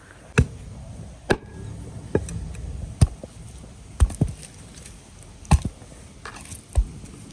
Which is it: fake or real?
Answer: real